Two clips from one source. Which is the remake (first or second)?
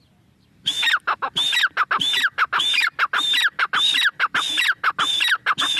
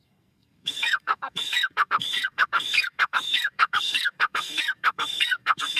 second